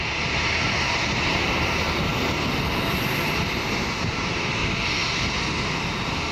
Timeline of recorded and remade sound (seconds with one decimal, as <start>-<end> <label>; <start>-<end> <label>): 0.0-2.1 remade; 2.1-2.9 recorded; 2.9-4.6 remade; 4.6-6.3 recorded